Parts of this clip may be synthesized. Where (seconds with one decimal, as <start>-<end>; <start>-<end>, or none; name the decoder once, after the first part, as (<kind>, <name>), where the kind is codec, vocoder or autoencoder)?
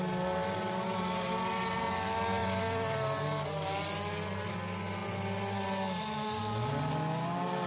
none